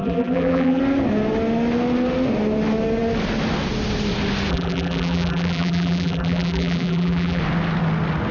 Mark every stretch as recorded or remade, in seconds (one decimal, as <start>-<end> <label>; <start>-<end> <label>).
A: 0.0-0.8 remade; 0.8-4.5 recorded; 4.5-7.4 remade; 7.4-8.3 recorded